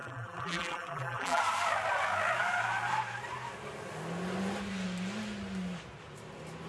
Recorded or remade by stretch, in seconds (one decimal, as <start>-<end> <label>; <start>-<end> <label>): 0.0-1.4 remade; 1.4-6.7 recorded